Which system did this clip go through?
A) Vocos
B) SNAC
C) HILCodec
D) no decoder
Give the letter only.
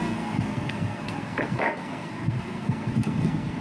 B